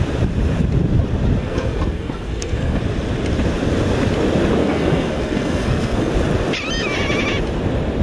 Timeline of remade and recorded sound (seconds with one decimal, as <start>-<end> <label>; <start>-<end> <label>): 0.0-1.4 recorded; 1.4-2.8 remade; 2.8-4.6 recorded; 4.6-6.1 remade; 6.1-8.0 recorded